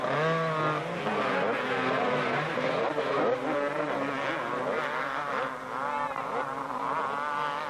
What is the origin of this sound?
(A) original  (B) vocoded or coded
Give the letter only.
A